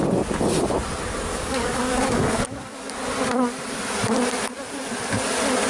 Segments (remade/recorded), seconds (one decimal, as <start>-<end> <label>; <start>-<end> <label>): 0.0-1.3 recorded; 1.3-2.9 remade; 2.9-5.7 recorded